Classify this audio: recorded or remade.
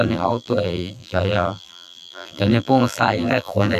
remade